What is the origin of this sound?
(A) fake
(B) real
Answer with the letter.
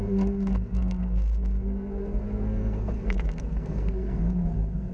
A